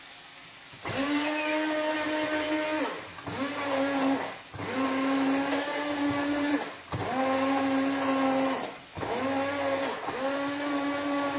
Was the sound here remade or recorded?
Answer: recorded